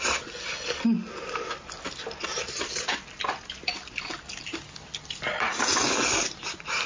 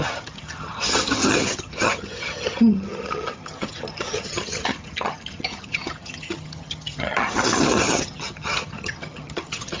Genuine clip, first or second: first